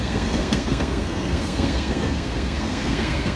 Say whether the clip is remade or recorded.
remade